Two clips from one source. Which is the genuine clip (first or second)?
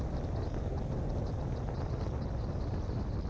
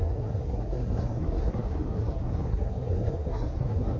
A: first